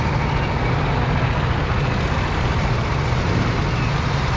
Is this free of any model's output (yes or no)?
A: yes